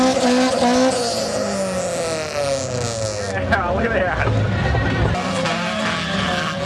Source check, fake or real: real